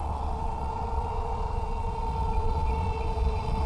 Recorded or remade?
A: remade